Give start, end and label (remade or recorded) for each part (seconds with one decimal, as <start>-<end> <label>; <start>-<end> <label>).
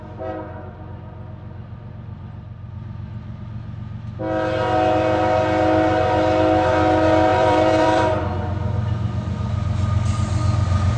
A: 0.0-7.3 recorded; 7.3-8.2 remade; 8.2-11.0 recorded